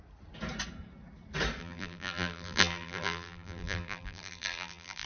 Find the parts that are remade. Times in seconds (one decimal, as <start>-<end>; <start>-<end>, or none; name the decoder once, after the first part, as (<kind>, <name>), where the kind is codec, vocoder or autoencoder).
1.6-5.1 (vocoder, BigVGAN v2)